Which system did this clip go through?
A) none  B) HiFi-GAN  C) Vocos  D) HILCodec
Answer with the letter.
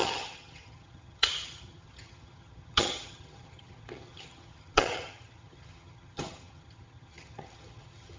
B